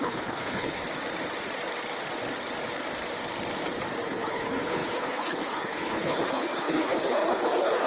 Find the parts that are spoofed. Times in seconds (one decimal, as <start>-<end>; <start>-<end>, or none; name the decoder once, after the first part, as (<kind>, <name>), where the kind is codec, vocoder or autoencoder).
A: 0.0-0.8 (codec, HILCodec); 4.1-7.9